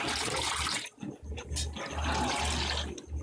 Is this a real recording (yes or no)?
yes